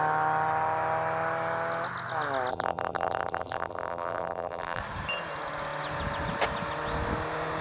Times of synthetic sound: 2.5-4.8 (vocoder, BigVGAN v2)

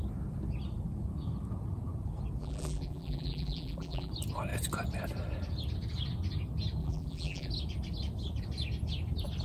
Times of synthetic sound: 2.4-4.1 (vocoder, BigVGAN v2); 6.8-7.5

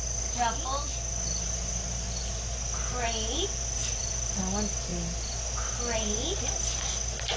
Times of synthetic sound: 3.8-4.4 (vocoder, BigVGAN v2)

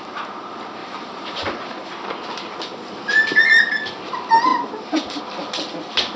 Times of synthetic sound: 0.8-1.9 (vocoder, BigVGAN v2); 4.5-5.2

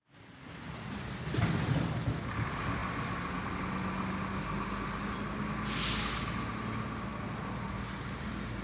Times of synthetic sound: none

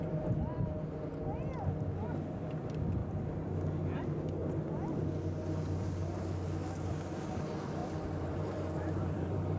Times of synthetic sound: 3.0-3.5 (vocoder, BigVGAN v2); 7.8-9.6